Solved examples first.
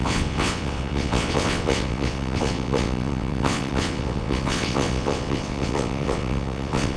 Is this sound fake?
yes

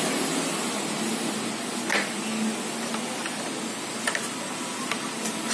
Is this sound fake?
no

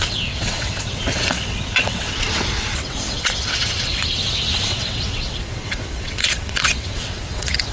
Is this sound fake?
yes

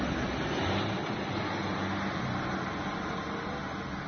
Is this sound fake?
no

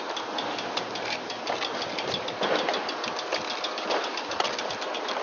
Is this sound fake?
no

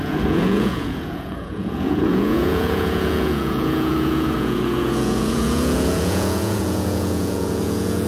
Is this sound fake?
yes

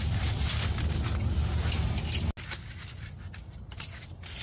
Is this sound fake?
no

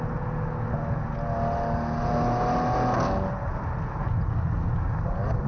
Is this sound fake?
no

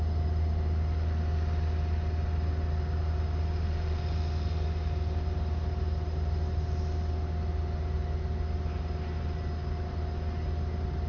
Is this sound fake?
no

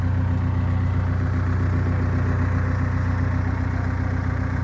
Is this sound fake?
no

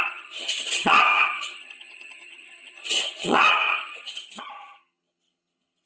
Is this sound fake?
yes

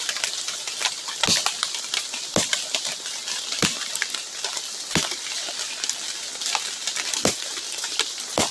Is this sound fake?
no